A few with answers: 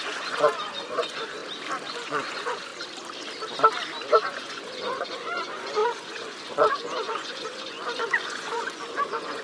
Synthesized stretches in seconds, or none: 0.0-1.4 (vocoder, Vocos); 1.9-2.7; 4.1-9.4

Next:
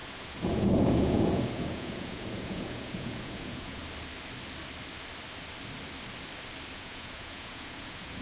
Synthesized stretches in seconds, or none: 0.0-3.8 (vocoder, Vocos); 6.7-8.2

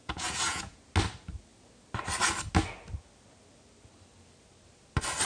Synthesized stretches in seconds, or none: 0.0-0.8 (vocoder, Vocos)

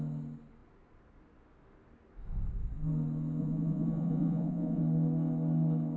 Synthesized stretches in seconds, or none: 3.4-4.8 (vocoder, Vocos)